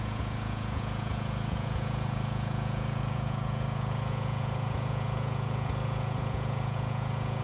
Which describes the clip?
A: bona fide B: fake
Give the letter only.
B